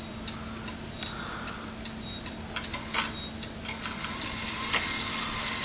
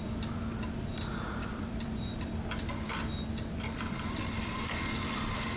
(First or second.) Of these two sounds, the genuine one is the first